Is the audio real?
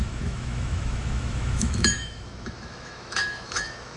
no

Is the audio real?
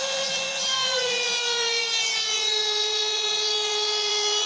no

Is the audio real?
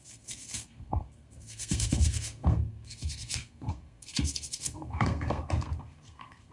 no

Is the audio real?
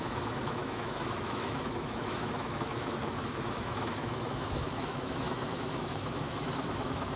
no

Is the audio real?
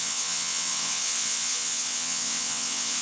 no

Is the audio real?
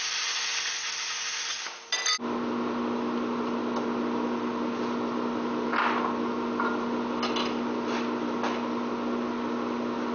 yes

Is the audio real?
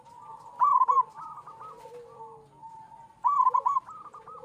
yes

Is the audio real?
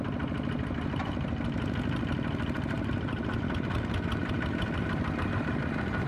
yes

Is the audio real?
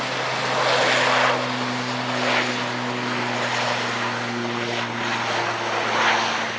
yes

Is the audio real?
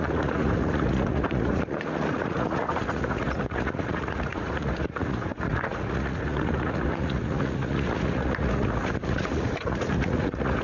no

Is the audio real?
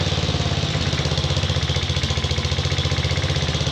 yes